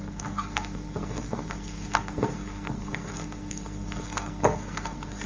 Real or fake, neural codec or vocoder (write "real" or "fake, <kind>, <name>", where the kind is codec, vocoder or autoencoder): fake, codec, SNAC